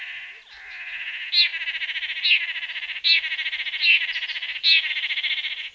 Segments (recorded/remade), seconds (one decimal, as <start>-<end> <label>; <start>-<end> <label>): 0.0-5.7 recorded